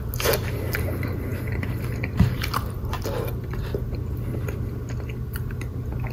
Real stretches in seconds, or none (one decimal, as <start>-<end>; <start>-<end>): 0.0-6.1